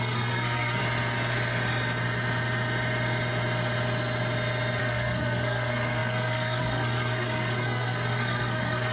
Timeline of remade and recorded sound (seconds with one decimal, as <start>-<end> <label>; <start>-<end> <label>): 0.0-0.8 remade; 0.8-4.8 recorded; 4.8-8.9 remade